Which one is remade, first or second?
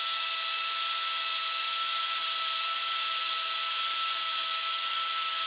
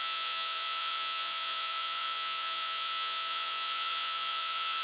second